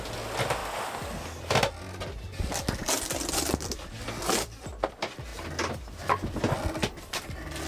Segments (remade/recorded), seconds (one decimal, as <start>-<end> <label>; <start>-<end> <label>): 0.0-0.6 remade; 0.6-4.2 recorded; 4.2-5.3 remade; 5.3-6.4 recorded; 6.4-7.7 remade